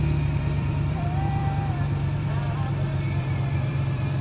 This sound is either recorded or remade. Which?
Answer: remade